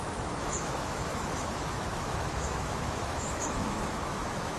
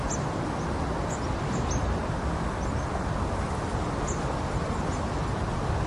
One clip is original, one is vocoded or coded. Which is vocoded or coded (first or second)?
first